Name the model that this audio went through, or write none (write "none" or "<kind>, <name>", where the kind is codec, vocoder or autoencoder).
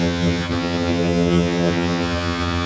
vocoder, HiFi-GAN